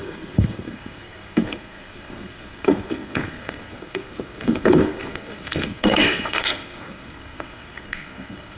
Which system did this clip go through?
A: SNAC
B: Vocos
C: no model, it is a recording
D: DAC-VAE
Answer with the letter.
A